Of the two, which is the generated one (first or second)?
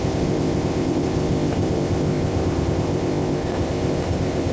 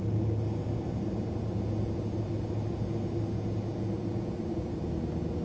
first